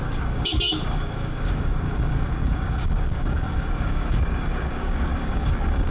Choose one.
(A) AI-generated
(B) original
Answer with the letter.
A